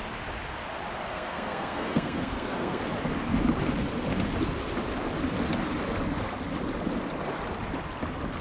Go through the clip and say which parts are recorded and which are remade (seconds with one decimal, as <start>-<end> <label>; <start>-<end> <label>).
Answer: 0.0-1.1 recorded; 1.1-2.8 remade; 2.8-8.4 recorded